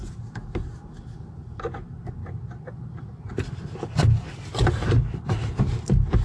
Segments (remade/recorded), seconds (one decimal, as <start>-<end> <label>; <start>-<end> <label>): 0.0-6.2 recorded